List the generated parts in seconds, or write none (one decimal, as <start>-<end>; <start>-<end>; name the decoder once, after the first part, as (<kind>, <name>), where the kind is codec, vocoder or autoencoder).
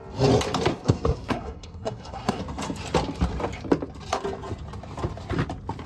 0.7-2.4 (codec, SNAC)